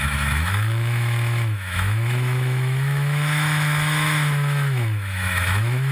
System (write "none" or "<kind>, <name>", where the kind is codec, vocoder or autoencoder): autoencoder, DAC-VAE